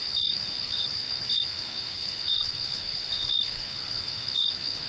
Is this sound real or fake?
fake